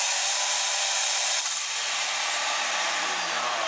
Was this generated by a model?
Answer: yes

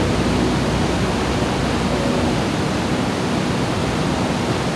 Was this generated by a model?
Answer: no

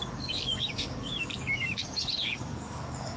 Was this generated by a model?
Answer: yes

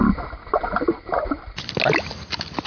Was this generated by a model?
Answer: no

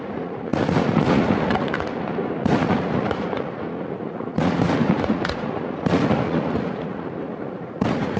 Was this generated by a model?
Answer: yes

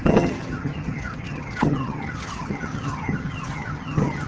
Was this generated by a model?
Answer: yes